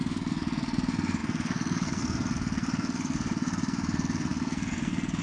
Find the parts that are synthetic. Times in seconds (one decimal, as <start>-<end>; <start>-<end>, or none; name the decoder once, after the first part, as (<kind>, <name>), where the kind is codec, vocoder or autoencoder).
0.0-5.2 (codec, SNAC)